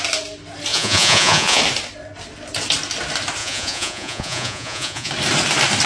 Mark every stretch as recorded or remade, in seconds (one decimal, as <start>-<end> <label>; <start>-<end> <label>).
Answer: 0.0-0.7 recorded; 0.7-1.6 remade; 1.6-3.4 recorded; 3.4-5.1 remade; 5.1-5.9 recorded